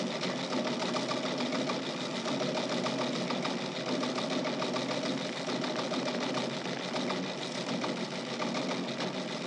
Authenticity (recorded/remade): recorded